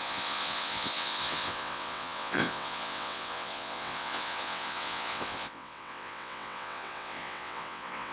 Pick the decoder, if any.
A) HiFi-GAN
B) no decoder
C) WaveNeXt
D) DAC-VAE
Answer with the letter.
C